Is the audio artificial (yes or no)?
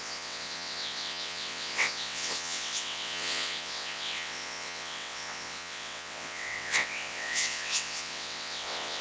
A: yes